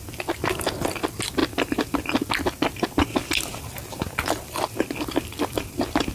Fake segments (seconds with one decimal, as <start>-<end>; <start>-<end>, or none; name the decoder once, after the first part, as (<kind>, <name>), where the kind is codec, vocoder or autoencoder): none